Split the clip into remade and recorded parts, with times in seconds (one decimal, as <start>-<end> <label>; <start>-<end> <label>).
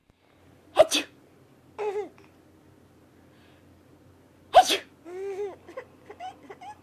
0.0-6.8 recorded